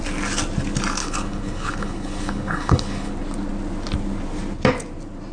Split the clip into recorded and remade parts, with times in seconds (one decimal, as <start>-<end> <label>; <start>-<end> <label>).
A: 0.0-1.0 recorded; 1.0-3.1 remade; 3.1-5.3 recorded